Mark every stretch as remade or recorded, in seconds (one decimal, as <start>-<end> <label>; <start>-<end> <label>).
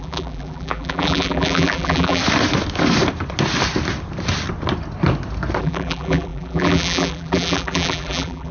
0.0-2.2 remade; 2.2-5.6 recorded; 5.6-8.5 remade